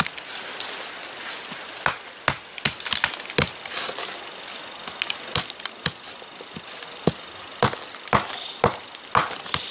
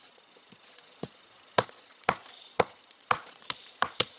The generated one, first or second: second